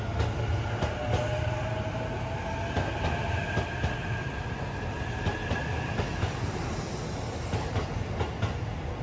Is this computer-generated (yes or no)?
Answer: no